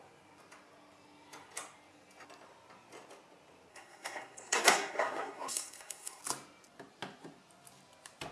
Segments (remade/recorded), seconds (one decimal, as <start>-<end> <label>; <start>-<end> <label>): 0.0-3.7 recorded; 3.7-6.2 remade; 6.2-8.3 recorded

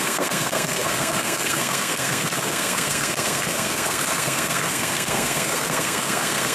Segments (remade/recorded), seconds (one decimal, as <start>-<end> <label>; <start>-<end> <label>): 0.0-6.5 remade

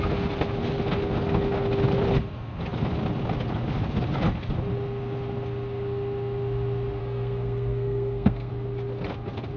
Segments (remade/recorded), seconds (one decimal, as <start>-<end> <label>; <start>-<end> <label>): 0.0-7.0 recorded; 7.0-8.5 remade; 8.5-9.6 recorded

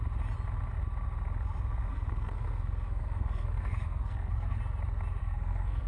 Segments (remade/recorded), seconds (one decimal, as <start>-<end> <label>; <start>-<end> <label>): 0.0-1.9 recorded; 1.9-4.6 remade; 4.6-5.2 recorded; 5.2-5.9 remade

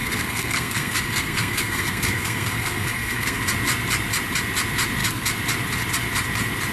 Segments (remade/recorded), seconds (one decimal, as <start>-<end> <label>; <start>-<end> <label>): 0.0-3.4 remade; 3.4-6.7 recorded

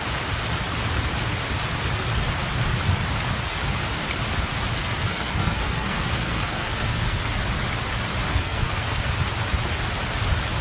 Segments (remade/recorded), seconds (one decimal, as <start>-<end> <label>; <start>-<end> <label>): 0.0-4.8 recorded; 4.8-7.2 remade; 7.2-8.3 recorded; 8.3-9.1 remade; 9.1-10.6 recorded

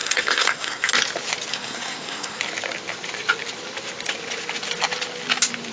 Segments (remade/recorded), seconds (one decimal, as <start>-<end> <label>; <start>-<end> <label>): 0.0-0.9 remade; 0.9-1.5 recorded; 1.5-2.4 remade; 2.4-5.7 recorded